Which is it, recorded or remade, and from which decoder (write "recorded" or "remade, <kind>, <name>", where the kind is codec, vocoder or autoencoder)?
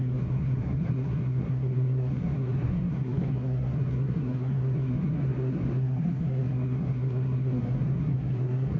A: remade, codec, SNAC